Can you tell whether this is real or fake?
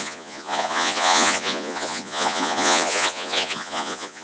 fake